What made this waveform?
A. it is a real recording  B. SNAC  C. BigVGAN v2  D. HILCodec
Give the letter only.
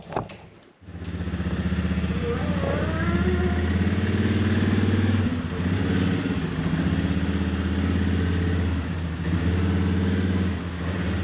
A